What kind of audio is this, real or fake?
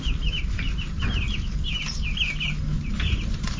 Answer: real